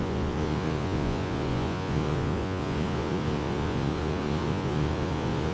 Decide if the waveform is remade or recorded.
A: remade